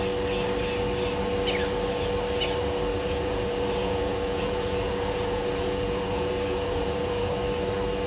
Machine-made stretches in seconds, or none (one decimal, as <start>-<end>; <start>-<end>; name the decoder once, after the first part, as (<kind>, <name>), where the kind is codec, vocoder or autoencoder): 2.9-7.3 (vocoder, Vocos)

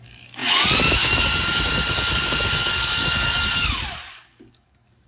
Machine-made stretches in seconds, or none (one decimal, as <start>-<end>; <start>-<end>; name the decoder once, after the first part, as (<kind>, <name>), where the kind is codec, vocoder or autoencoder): 0.0-5.1 (codec, DAC)

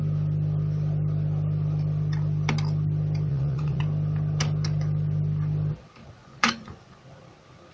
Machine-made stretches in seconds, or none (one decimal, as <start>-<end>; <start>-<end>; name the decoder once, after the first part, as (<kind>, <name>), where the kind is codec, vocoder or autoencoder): 3.3-3.8 (vocoder, Vocos); 6.2-7.0

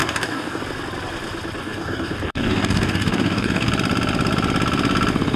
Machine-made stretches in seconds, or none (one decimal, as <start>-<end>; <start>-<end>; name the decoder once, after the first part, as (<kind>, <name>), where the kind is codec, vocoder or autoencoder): 0.0-0.6 (codec, DAC); 1.6-3.7

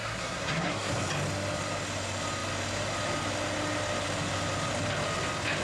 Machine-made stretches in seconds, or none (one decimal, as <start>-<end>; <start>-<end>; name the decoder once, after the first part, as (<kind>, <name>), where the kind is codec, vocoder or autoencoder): 0.0-0.9 (codec, SNAC)

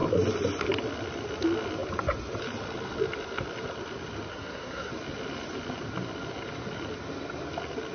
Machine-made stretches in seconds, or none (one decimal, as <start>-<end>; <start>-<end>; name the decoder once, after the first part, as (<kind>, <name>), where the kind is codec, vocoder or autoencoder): 4.3-4.9 (codec, SNAC)

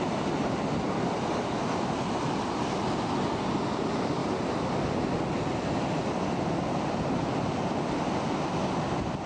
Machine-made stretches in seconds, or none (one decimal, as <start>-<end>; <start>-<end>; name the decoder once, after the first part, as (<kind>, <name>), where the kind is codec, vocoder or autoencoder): none